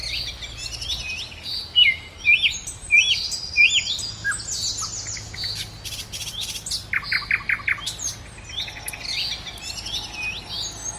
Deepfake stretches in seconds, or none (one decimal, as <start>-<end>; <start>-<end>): none